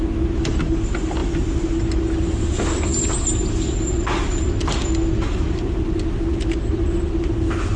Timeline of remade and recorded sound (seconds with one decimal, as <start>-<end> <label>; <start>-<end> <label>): 0.0-7.8 recorded